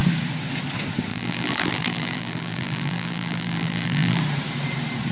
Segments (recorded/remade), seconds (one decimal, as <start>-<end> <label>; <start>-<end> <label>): 0.0-1.1 recorded; 1.1-4.2 remade; 4.2-5.1 recorded

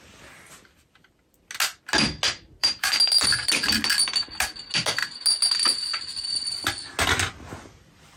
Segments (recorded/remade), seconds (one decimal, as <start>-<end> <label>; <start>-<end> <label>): 0.0-2.6 recorded; 2.6-3.5 remade; 3.5-8.2 recorded